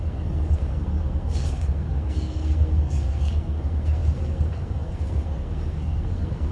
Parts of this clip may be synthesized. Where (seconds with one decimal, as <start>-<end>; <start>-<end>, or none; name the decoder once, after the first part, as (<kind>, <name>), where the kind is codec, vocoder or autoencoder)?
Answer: 0.0-6.5 (codec, SNAC)